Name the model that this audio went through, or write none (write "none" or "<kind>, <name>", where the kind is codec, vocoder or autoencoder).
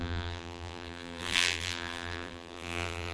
vocoder, BigVGAN v2